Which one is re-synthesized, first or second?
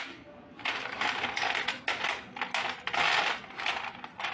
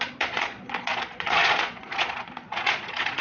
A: second